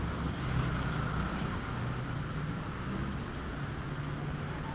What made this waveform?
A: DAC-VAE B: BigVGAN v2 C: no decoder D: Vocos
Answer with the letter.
C